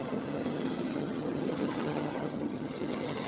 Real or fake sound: fake